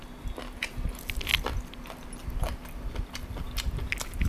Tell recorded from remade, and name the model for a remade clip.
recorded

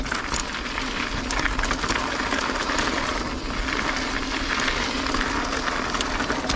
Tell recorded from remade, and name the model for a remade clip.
recorded